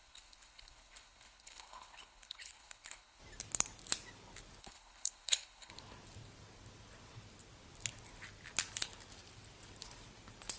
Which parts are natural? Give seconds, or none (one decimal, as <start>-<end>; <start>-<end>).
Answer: 3.2-4.6; 5.7-10.6